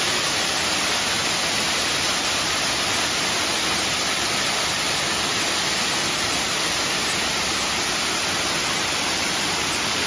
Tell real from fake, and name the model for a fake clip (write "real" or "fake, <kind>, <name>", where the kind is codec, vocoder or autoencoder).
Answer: real